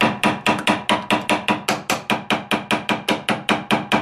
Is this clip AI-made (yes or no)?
no